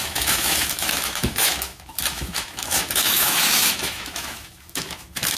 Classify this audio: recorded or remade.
remade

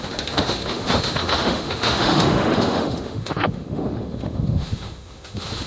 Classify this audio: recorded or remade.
remade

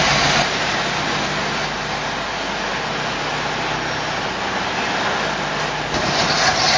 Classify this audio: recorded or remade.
recorded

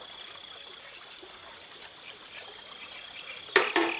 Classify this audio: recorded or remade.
recorded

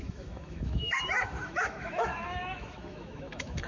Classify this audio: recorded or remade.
remade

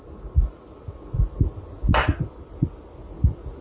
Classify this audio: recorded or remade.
recorded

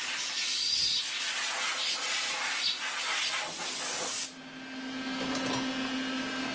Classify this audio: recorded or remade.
recorded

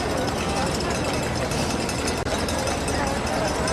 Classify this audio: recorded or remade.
recorded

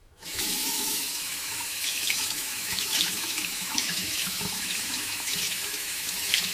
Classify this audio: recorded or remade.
remade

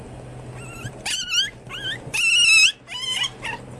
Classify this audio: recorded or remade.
recorded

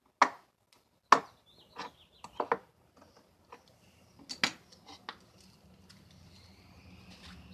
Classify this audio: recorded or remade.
recorded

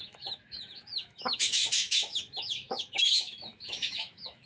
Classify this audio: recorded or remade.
remade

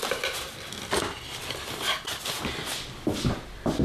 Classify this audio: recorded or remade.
recorded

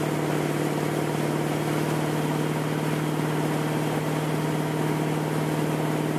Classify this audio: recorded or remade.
recorded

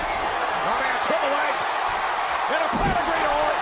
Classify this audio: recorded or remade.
recorded